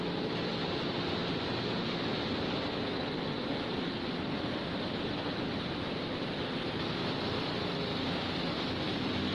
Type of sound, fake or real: real